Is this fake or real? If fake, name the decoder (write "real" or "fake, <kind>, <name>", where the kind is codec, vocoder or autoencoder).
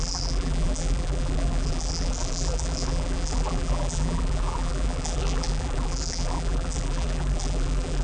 fake, vocoder, BigVGAN v2